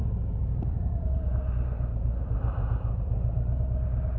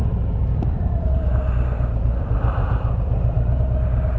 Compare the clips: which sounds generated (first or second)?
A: second